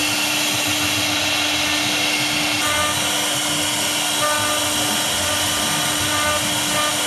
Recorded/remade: recorded